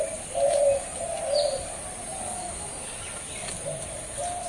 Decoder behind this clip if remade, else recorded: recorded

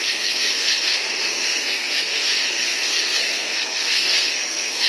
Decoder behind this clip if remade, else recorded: remade, codec, SNAC